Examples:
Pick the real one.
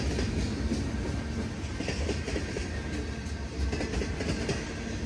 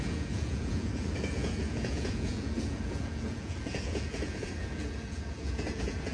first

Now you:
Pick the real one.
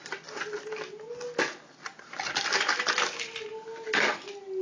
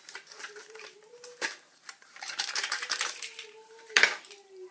first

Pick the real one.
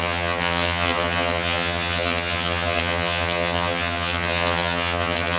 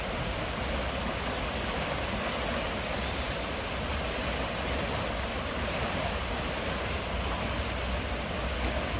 second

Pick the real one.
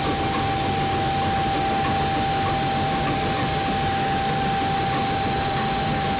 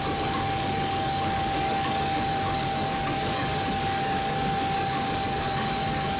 first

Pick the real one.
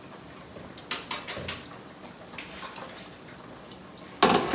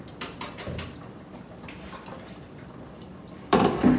first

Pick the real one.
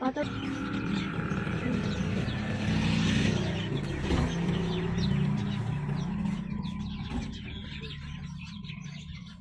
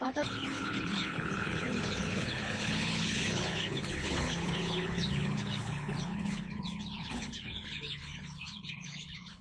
first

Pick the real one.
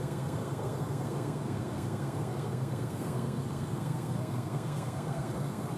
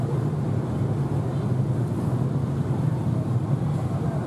second